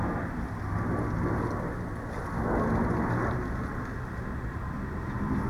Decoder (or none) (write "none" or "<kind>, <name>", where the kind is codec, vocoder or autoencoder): none